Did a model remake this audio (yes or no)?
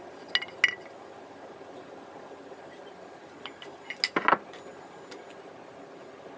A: no